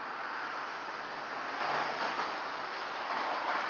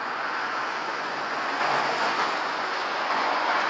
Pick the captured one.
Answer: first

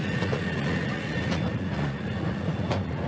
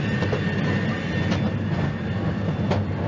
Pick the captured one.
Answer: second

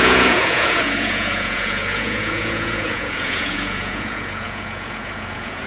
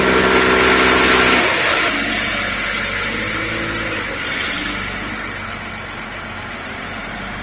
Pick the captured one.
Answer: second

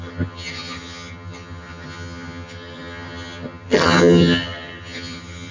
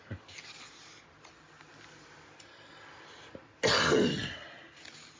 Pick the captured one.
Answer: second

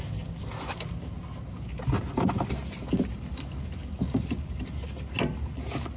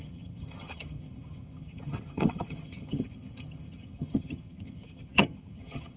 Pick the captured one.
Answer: first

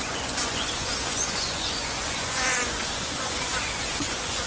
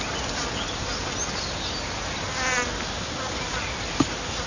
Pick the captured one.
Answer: second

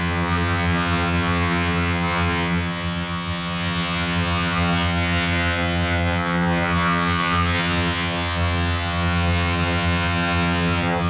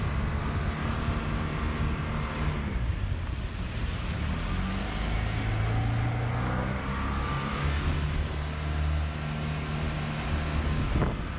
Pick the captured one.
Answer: second